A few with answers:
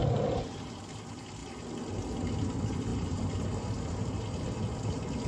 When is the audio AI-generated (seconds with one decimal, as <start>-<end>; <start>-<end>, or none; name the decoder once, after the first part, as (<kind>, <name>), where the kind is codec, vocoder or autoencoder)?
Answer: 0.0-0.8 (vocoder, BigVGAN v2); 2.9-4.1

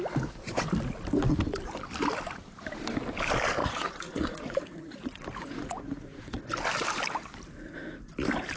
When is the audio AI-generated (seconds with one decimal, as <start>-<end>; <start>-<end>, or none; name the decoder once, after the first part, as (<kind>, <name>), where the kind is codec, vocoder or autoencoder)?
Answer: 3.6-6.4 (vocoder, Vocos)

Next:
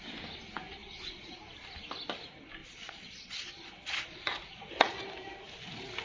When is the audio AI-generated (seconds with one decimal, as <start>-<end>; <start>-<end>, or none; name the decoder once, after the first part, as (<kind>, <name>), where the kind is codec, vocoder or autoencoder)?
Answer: 0.8-1.4 (vocoder, Vocos); 2.6-5.0